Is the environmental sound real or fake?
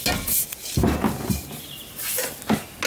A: real